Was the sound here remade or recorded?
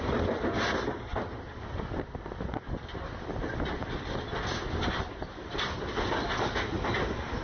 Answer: recorded